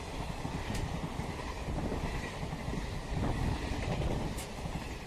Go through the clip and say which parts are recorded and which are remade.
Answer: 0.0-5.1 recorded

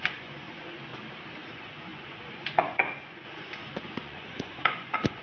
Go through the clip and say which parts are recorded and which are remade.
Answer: 0.0-0.9 remade; 0.9-1.5 recorded; 1.5-5.2 remade

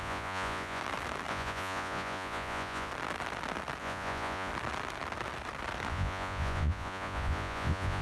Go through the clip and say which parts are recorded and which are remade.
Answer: 0.0-0.8 remade; 0.8-1.3 recorded; 1.3-2.9 remade; 2.9-3.8 recorded; 3.8-4.5 remade; 4.5-5.9 recorded; 5.9-8.0 remade

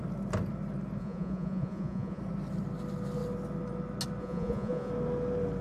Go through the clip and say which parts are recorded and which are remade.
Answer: 0.0-1.0 recorded; 1.0-2.2 remade; 2.2-4.2 recorded; 4.2-4.9 remade; 4.9-5.6 recorded

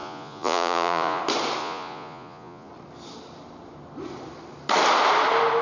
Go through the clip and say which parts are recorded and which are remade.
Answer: 0.0-1.2 remade; 1.2-1.6 recorded; 1.6-2.7 remade; 2.7-5.6 recorded